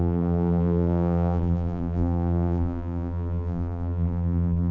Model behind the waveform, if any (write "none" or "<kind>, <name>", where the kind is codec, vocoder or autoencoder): vocoder, BigVGAN v2